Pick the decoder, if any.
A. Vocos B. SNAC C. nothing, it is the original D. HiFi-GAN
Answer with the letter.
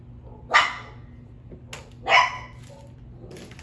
C